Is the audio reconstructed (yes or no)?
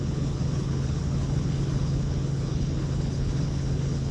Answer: yes